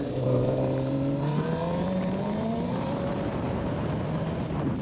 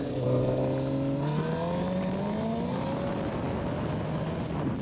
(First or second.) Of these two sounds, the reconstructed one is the first